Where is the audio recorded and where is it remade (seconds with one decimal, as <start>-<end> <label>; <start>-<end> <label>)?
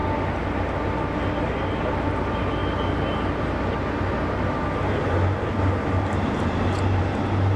0.0-7.6 recorded